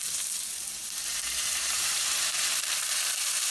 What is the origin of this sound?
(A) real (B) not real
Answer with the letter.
B